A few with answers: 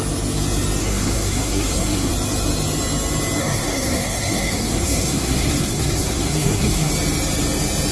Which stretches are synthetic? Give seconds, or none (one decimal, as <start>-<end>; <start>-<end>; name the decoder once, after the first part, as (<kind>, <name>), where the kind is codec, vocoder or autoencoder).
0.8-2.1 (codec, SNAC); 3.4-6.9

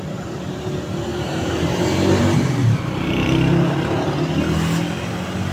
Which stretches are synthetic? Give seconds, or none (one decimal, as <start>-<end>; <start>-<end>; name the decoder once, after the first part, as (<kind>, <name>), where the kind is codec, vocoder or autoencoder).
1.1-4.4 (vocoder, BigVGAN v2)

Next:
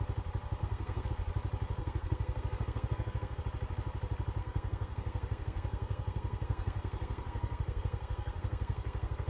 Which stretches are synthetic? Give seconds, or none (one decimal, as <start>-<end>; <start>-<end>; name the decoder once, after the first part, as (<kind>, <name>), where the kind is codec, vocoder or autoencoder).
0.6-1.1 (codec, SNAC); 1.8-3.4; 4.4-9.3

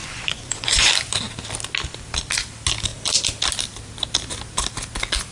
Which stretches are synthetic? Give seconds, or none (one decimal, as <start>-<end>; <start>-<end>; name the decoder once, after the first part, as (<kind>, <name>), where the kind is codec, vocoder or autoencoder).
0.0-0.9 (vocoder, Vocos)

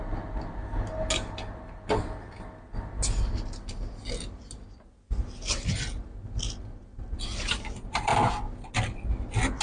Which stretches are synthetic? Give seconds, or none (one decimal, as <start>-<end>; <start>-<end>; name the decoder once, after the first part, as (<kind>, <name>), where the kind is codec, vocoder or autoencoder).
none

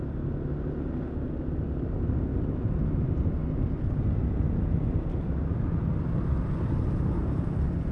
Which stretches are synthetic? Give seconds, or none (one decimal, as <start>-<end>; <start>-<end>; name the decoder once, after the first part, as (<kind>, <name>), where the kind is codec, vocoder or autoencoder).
none